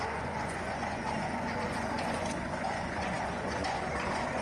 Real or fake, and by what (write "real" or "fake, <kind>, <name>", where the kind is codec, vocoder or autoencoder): fake, vocoder, Vocos